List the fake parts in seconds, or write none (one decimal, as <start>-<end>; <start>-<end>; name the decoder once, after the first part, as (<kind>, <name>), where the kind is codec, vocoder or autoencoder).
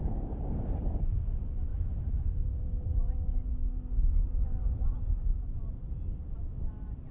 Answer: 1.7-3.2 (vocoder, BigVGAN v2); 4.1-5.1